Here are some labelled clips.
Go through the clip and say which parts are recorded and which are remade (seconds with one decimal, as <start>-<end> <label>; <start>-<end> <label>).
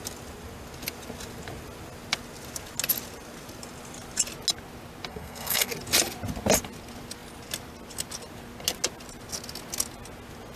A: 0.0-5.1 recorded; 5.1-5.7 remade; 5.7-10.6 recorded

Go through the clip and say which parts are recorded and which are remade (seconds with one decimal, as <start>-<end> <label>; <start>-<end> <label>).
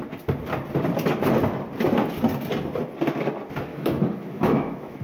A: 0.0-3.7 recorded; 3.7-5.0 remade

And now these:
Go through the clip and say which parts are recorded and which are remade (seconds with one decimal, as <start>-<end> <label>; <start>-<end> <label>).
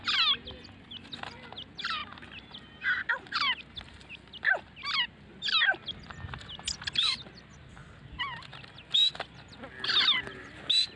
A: 0.0-11.0 recorded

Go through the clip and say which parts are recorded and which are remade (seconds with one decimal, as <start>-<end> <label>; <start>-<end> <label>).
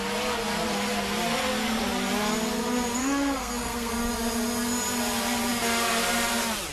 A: 0.0-3.0 recorded; 3.0-3.9 remade; 3.9-6.7 recorded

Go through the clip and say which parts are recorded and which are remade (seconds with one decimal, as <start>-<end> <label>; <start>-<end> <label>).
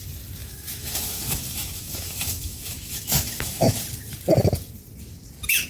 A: 0.0-0.4 recorded; 0.4-3.8 remade; 3.8-5.7 recorded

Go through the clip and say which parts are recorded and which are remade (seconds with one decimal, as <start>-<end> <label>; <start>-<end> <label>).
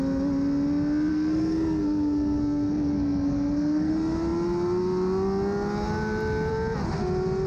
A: 0.0-1.1 recorded; 1.1-3.9 remade; 3.9-7.5 recorded